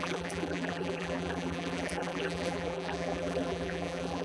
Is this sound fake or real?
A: fake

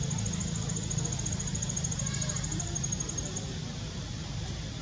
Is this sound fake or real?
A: real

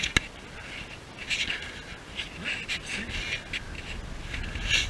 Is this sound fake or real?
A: real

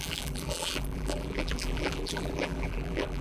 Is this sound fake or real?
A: fake